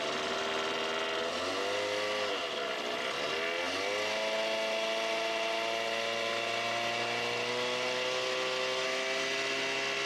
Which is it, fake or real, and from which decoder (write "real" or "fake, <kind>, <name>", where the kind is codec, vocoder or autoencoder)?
real